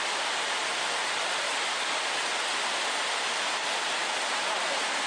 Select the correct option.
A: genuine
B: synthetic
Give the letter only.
A